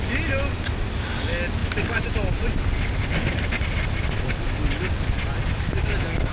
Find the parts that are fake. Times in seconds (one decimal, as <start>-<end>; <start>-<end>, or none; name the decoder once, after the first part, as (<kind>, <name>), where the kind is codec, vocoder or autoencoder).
none